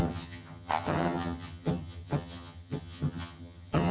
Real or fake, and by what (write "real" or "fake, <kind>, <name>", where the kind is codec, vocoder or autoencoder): fake, vocoder, HiFi-GAN